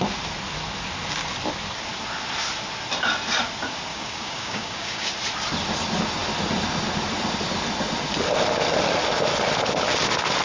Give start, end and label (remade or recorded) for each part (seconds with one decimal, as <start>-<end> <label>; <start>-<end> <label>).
0.0-3.9 recorded; 3.9-5.1 remade; 5.1-10.4 recorded